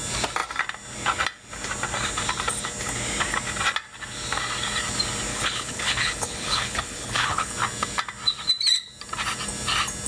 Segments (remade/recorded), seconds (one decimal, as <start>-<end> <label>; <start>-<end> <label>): 0.0-5.3 recorded; 5.3-7.5 remade; 7.5-10.1 recorded